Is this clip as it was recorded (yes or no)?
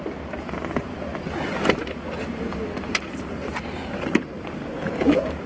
yes